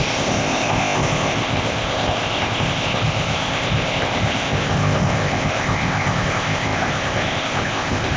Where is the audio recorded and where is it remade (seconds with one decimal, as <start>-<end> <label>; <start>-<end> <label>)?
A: 0.0-8.2 remade